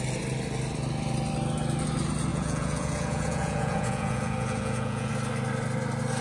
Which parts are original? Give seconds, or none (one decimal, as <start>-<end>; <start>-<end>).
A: 0.0-2.3; 5.1-6.2